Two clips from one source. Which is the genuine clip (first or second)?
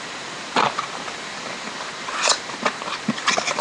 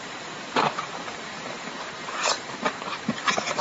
first